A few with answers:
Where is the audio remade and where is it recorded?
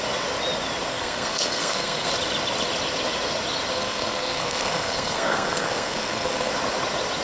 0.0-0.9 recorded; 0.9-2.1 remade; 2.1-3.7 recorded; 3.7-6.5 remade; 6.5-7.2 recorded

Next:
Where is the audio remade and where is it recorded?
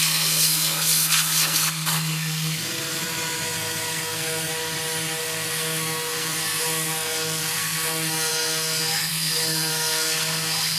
0.0-4.5 remade; 4.5-5.2 recorded; 5.2-10.8 remade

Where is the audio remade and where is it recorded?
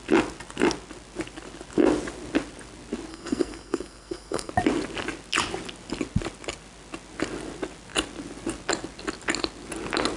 0.0-3.1 recorded; 3.1-4.5 remade; 4.5-10.2 recorded